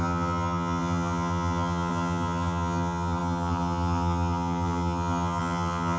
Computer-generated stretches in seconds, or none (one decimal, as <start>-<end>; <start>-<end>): 0.0-6.0